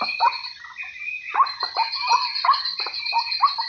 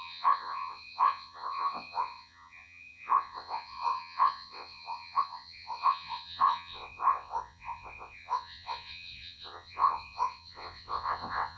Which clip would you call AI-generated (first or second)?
second